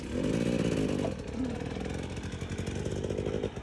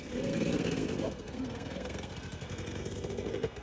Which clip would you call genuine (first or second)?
first